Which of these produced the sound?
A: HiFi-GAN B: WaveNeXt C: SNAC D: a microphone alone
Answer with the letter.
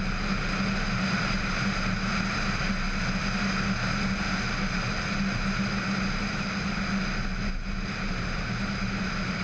D